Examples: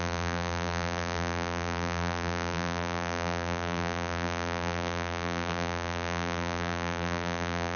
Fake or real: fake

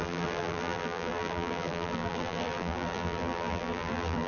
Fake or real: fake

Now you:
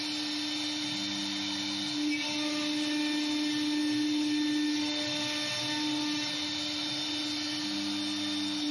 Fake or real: real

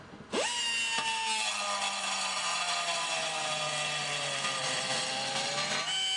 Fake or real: real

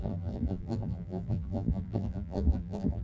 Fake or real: fake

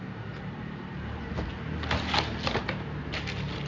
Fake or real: real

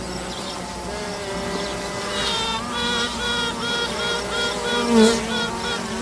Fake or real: real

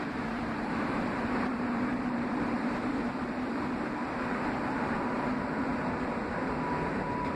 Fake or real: fake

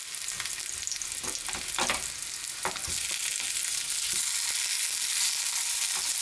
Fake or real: real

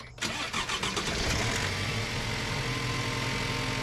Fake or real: real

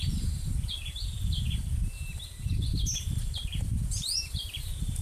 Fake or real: fake